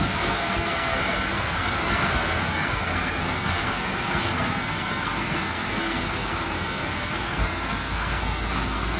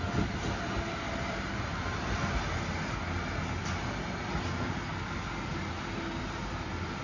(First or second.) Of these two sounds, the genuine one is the second